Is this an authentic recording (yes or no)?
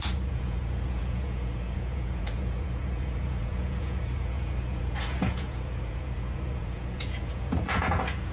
no